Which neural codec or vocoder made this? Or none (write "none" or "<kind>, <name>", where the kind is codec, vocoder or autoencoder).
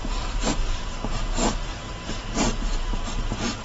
vocoder, BigVGAN v2